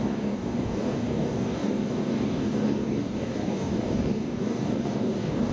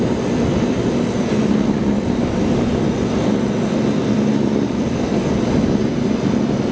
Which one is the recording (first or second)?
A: second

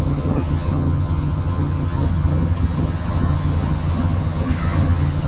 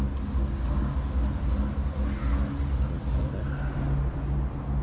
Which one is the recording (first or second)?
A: second